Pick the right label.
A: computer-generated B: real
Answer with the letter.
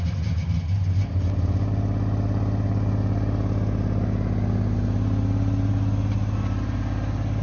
B